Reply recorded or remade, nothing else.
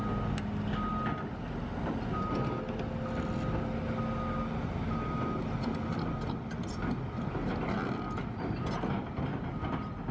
recorded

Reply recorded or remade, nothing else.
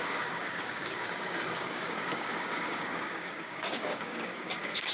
remade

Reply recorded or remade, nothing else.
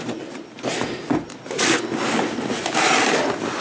recorded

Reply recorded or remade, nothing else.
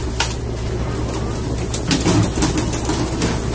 recorded